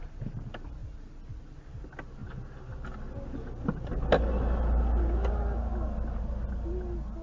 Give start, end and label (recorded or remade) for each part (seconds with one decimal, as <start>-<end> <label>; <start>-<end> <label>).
0.0-7.2 recorded